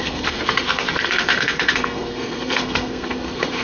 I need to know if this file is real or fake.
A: fake